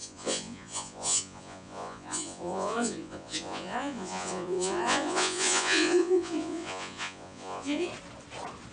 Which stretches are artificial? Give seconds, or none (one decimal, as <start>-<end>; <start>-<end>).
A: 0.0-7.9